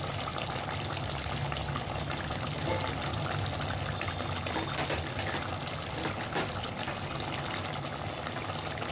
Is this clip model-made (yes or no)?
no